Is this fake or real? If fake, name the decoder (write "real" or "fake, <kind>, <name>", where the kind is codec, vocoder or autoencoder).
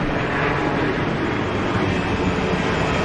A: real